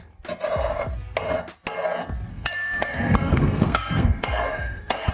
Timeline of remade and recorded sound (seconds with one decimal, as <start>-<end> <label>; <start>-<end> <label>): 0.0-2.3 recorded; 2.3-5.1 remade